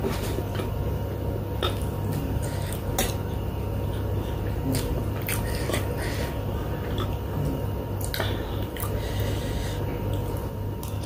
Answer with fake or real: real